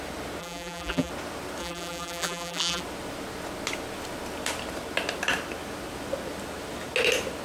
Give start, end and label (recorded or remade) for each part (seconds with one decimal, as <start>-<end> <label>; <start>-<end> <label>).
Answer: 0.0-0.4 recorded; 0.4-1.1 remade; 1.1-1.6 recorded; 1.6-2.8 remade; 2.8-7.4 recorded